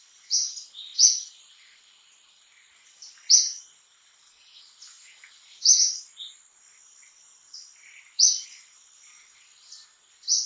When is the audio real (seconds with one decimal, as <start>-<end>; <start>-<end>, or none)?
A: 0.0-10.5